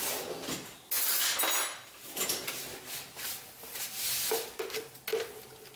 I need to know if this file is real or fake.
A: real